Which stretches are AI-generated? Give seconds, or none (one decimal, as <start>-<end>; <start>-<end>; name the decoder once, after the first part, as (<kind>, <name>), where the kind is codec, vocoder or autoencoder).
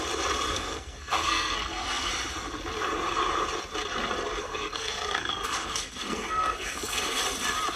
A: 0.5-2.1 (codec, SNAC); 4.4-7.2